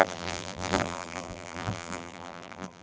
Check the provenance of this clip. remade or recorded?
remade